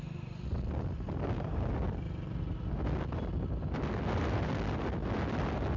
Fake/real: real